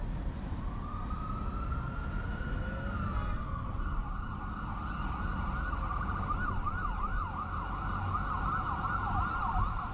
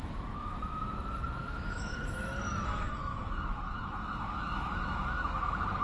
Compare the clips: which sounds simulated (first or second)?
second